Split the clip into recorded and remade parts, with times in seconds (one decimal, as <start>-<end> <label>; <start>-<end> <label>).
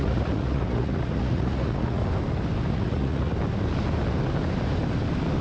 0.0-2.0 remade; 2.0-2.7 recorded; 2.7-3.3 remade; 3.3-5.4 recorded